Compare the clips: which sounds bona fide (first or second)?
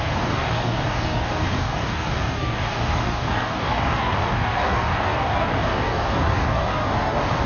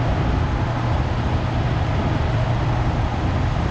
second